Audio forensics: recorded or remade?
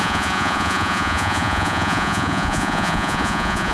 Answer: remade